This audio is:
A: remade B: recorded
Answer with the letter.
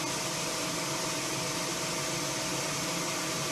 B